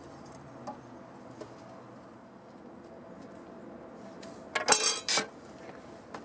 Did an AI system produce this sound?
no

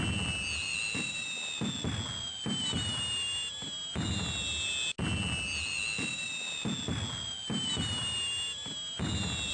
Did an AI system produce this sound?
no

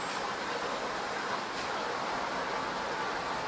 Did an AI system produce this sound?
no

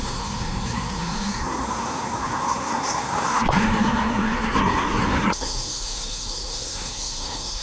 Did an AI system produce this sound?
yes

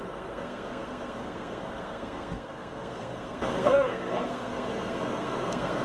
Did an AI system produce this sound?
yes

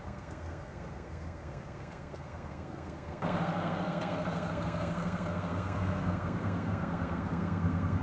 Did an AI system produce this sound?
yes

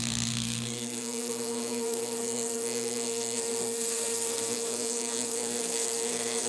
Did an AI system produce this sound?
yes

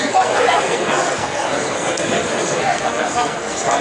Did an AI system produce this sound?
yes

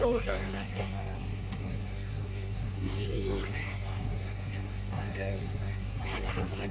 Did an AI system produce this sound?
yes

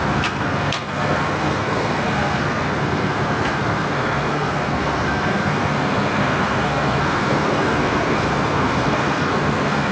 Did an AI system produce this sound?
yes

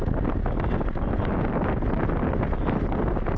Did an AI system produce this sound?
no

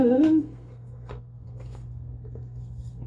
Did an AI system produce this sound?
yes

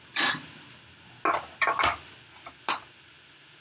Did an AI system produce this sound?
no